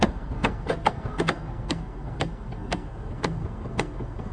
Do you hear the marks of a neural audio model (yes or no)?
yes